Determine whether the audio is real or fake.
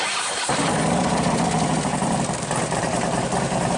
fake